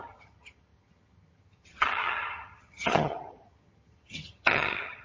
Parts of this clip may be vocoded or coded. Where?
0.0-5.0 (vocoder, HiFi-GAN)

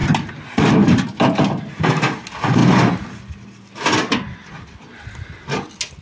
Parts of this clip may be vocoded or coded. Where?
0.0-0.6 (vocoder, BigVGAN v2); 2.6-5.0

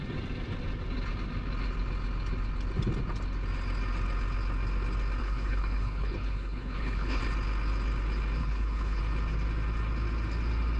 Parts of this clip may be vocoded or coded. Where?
5.2-7.2 (codec, HILCodec); 8.4-9.0

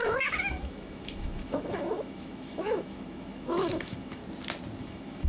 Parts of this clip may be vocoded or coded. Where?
0.0-4.2 (autoencoder, DAC-VAE); 4.8-5.3